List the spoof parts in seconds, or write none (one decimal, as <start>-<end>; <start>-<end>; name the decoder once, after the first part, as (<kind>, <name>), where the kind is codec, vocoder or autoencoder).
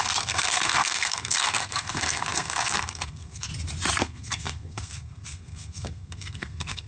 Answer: 0.0-3.5 (codec, SNAC); 4.0-6.9